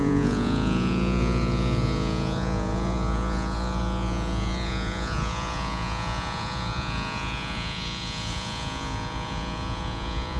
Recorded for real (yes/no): no